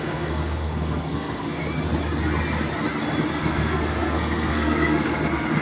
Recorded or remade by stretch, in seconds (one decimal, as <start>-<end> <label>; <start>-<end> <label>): 0.0-1.6 remade; 1.6-3.3 recorded; 3.3-5.6 remade